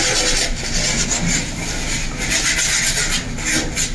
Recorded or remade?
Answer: recorded